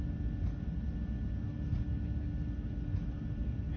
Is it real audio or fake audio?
real